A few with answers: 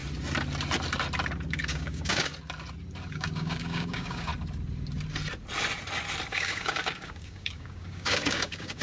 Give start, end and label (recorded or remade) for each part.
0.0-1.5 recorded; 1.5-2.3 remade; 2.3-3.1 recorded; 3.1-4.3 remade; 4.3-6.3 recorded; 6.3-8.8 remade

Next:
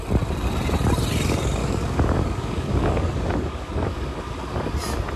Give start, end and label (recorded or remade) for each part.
0.0-1.6 recorded; 1.6-4.7 remade; 4.7-5.2 recorded

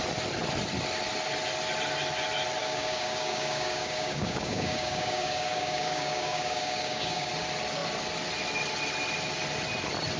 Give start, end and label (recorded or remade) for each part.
0.0-2.6 recorded; 2.6-7.3 remade; 7.3-10.2 recorded

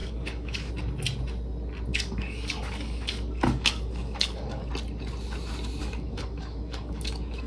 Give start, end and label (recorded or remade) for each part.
0.0-0.7 remade; 0.7-1.9 recorded; 1.9-4.7 remade; 4.7-5.8 recorded; 5.8-7.5 remade